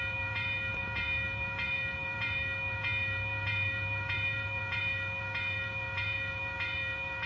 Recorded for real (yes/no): no